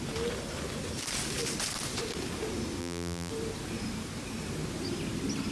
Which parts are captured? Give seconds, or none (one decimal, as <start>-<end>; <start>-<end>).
0.0-2.8; 3.3-5.5